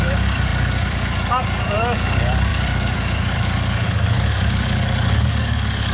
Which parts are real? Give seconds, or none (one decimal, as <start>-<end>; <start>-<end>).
none